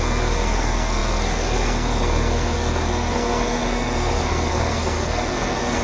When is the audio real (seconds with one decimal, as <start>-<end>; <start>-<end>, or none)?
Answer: none